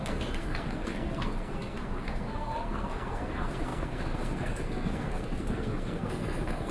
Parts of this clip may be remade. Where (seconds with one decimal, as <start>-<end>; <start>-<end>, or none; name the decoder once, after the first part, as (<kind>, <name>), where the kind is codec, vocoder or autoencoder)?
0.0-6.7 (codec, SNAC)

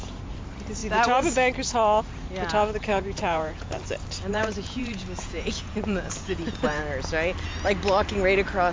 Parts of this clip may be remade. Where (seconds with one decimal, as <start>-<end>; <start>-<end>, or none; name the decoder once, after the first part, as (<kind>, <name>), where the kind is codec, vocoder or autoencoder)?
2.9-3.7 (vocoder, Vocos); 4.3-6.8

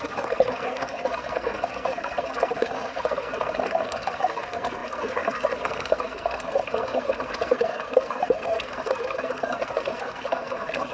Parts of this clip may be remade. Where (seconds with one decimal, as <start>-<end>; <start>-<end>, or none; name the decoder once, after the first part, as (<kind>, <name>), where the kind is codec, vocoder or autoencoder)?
0.0-10.9 (codec, SNAC)

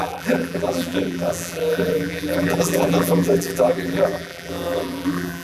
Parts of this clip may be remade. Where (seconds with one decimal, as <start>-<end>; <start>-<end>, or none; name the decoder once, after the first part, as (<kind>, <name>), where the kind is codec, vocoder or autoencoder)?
0.0-5.4 (vocoder, BigVGAN v2)

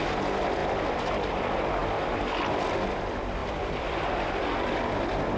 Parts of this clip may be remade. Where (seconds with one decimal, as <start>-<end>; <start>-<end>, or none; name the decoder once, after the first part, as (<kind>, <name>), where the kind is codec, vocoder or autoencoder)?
0.6-1.4 (vocoder, BigVGAN v2); 3.4-4.4

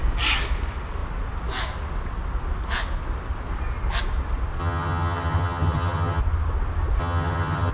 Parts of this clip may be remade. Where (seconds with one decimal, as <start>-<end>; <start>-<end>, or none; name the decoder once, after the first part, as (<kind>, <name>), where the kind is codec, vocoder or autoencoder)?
4.6-6.2 (vocoder, HiFi-GAN); 7.0-7.7

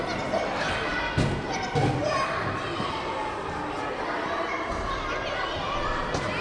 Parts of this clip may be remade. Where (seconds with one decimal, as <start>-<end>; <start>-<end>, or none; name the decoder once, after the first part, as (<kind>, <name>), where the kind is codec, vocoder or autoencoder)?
none

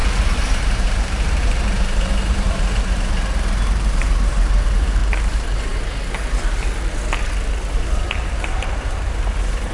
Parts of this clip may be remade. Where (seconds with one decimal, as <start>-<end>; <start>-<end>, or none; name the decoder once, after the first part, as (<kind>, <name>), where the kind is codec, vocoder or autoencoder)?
0.0-5.0 (vocoder, BigVGAN v2); 7.7-9.7